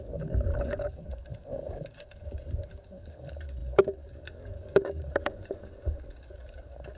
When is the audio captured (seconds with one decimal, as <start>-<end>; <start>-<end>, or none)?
none